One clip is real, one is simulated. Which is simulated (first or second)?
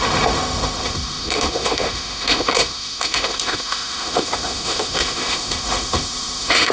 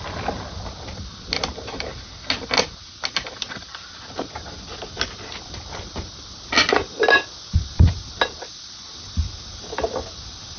first